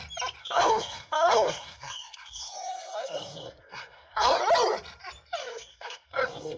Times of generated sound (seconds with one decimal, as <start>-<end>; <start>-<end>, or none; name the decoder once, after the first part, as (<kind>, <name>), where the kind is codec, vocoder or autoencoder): 0.4-4.4 (codec, SNAC); 5.4-6.6